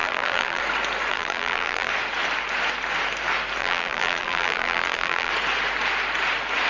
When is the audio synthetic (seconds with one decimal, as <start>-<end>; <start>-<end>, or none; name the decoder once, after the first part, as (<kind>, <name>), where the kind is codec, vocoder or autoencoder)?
0.0-0.6 (vocoder, BigVGAN v2); 1.1-1.9; 3.6-5.3